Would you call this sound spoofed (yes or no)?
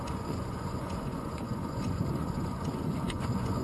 yes